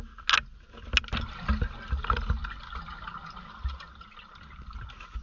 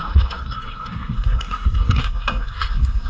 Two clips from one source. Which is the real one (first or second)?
first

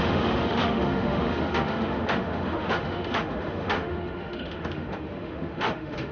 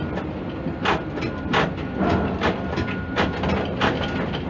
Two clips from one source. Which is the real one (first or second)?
second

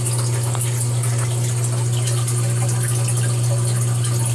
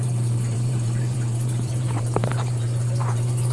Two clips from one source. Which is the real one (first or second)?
first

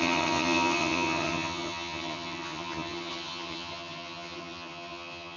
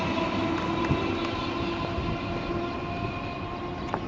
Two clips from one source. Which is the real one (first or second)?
second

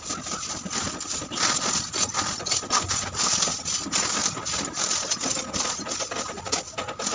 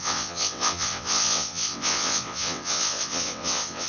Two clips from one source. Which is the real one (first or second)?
first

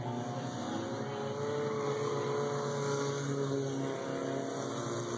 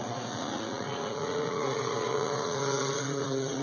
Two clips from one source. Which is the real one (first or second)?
first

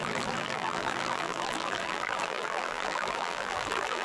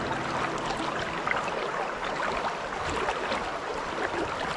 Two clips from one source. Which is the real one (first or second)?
second